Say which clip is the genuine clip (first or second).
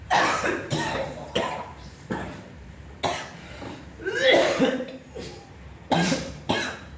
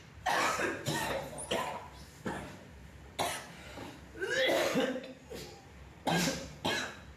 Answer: second